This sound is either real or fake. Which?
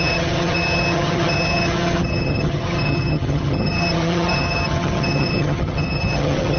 fake